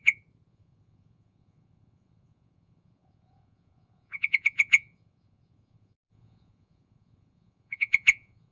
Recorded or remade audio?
remade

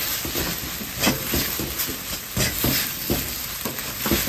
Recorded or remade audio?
recorded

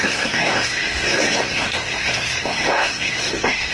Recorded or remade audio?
remade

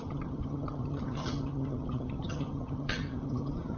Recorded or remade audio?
remade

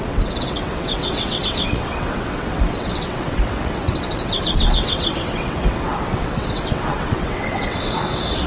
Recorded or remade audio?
remade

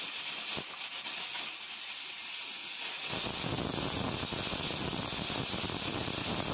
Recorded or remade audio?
recorded